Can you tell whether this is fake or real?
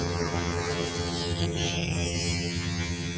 fake